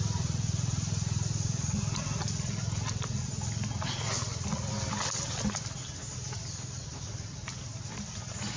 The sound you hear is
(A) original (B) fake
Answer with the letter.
A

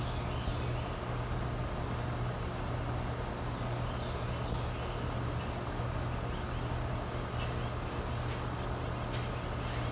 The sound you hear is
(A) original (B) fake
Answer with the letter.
A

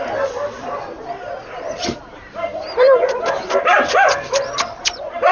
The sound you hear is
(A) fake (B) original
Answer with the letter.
B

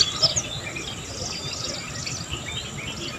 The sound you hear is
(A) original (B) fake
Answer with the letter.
A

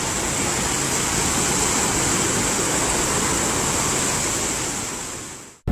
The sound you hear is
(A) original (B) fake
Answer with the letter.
A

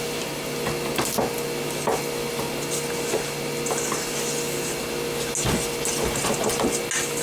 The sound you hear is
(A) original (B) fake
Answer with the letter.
A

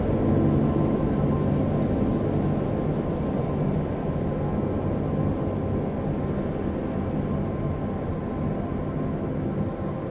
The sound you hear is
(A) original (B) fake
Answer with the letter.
A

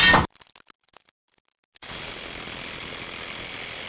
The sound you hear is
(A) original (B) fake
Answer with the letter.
A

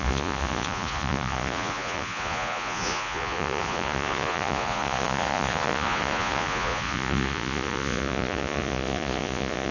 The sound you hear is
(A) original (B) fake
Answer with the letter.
B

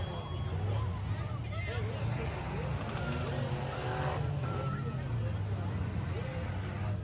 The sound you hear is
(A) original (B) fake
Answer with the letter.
A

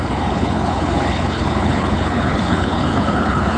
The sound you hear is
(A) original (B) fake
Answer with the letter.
B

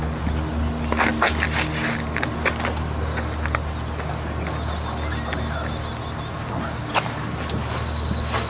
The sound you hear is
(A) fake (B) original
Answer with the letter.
B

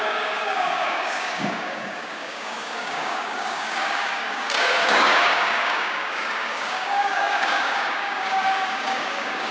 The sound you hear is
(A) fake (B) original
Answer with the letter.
A